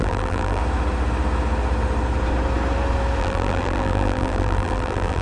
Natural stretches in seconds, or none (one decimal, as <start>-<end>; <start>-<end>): 0.6-3.2